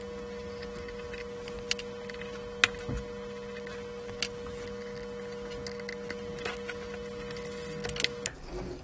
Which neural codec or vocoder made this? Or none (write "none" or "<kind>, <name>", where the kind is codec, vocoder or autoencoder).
none